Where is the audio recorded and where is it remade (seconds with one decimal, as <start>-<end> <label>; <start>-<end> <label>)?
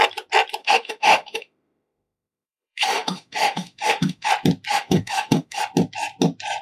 0.0-0.6 recorded; 0.6-4.3 remade; 4.3-4.7 recorded; 4.7-5.6 remade; 5.6-6.6 recorded